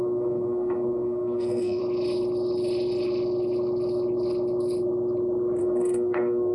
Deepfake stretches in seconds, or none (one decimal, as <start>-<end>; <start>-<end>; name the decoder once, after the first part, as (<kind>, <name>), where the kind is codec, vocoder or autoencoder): 0.0-1.8 (codec, SNAC); 5.6-6.5